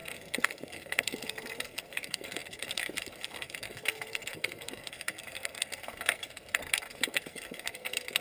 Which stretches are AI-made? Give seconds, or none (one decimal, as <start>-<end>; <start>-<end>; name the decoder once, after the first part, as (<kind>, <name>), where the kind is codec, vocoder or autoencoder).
0.0-8.2 (codec, SNAC)